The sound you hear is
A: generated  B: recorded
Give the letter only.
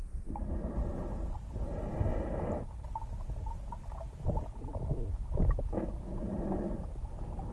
B